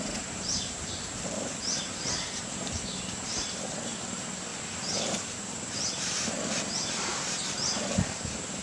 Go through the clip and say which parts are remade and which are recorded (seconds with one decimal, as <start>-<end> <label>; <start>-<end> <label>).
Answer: 0.0-8.6 remade